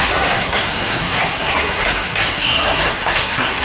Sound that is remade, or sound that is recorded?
remade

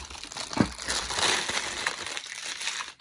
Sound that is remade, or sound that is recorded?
recorded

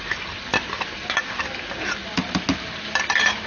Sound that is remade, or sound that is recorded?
recorded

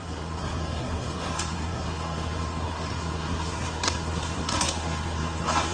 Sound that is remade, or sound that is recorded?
remade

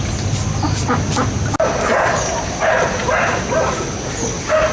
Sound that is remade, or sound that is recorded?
recorded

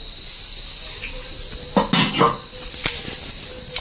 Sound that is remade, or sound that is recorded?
recorded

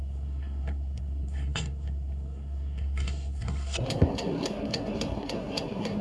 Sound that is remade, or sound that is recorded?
remade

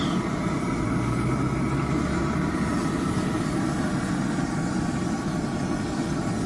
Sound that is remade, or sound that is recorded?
recorded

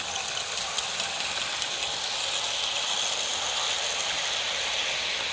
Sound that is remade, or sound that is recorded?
recorded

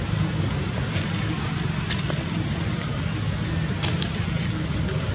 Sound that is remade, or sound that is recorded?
recorded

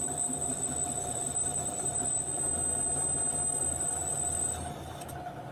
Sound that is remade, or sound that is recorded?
recorded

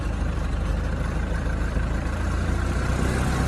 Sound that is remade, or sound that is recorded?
recorded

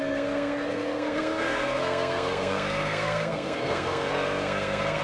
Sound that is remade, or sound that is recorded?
remade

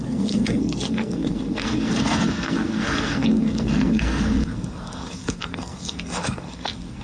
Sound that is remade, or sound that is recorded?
remade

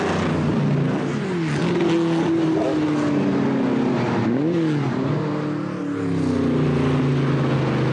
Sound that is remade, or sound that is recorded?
recorded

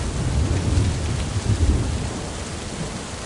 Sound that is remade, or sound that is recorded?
recorded